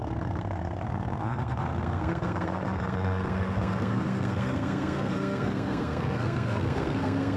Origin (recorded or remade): remade